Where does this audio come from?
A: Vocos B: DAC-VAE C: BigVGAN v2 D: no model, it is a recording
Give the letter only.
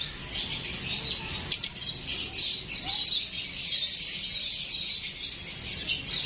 D